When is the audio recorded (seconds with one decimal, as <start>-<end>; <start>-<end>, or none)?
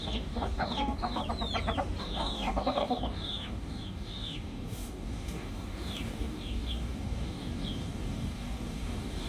1.2-2.0